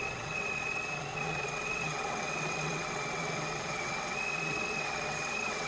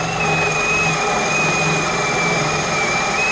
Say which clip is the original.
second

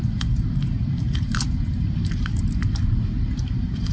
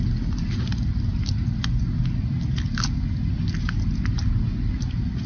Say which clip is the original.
second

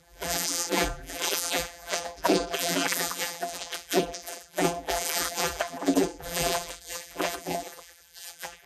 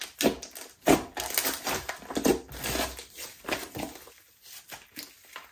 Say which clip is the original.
second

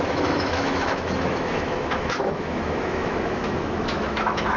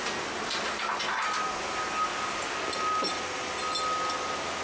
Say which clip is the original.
second